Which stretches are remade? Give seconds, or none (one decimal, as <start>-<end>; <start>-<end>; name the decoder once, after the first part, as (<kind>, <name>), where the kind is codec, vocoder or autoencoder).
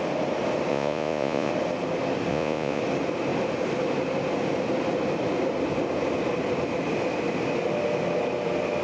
0.7-1.5 (vocoder, Vocos); 2.3-2.8